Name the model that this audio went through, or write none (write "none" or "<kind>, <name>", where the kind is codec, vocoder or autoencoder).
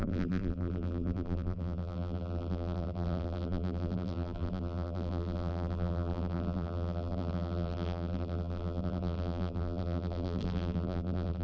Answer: vocoder, BigVGAN v2